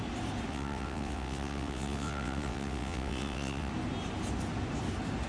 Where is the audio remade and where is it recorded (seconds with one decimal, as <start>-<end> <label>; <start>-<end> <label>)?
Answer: 0.0-0.5 recorded; 0.5-3.7 remade; 3.7-5.3 recorded